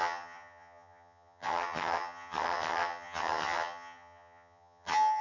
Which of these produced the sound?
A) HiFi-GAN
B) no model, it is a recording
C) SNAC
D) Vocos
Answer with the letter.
A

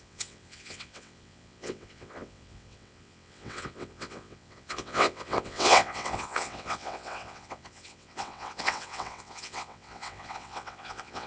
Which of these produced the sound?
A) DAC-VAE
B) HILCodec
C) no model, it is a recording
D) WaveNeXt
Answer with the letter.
D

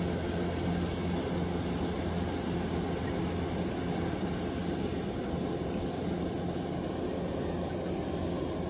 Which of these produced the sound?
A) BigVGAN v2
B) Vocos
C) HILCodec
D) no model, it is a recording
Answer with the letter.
D